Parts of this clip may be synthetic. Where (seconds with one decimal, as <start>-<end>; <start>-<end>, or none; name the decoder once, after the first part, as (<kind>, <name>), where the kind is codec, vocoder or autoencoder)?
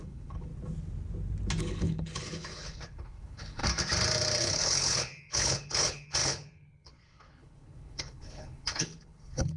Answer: 0.0-0.5 (codec, HILCodec); 1.6-3.6; 4.4-9.6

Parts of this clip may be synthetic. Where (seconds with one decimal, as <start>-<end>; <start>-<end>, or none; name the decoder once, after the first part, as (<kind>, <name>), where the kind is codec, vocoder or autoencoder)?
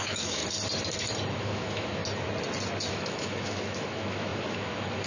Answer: 0.0-0.4 (autoencoder, DAC-VAE); 1.3-2.0; 2.9-5.1